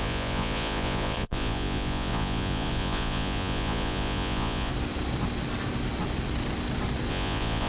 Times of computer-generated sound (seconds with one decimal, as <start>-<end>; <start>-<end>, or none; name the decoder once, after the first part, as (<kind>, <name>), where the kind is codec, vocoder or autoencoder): 0.0-4.7 (vocoder, Vocos); 7.1-7.7